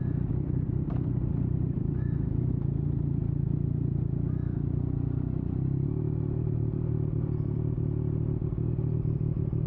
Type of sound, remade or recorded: remade